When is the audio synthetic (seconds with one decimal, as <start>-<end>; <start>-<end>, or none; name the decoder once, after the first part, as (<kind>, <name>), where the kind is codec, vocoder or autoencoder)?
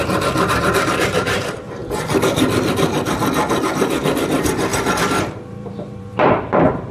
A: 0.6-1.8 (vocoder, BigVGAN v2); 3.7-6.9